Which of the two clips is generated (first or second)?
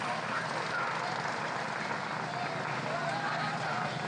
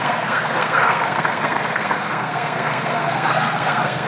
second